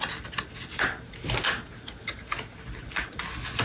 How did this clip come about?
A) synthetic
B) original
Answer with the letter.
B